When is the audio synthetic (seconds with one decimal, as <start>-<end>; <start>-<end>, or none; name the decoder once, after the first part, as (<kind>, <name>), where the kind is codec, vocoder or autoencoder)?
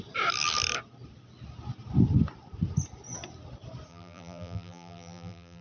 3.9-5.6 (vocoder, BigVGAN v2)